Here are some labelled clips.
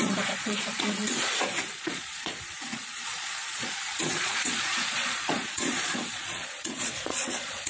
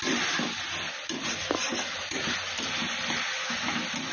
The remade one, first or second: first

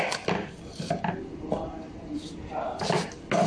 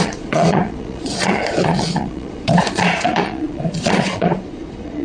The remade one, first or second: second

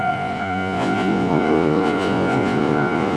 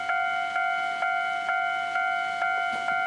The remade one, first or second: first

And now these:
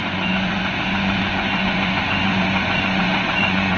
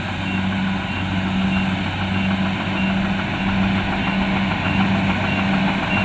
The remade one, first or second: first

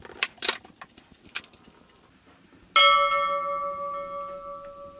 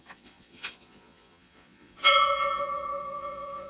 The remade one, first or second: second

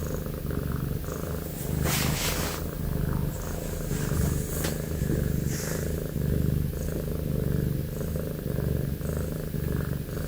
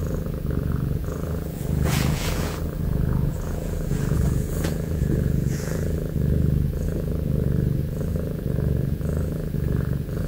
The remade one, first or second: second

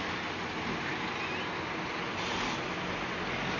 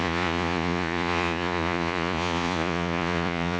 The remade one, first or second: second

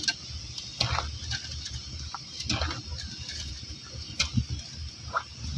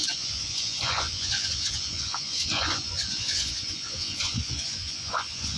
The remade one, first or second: second